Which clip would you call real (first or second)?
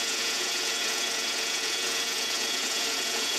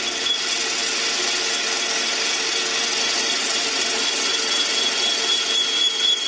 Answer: second